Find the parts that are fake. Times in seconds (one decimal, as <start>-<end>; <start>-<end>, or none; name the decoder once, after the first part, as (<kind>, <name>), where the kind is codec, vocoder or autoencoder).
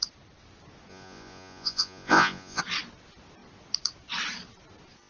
0.9-2.6 (vocoder, Vocos)